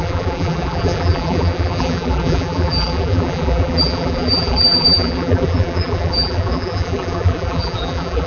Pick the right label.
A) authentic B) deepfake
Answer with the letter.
B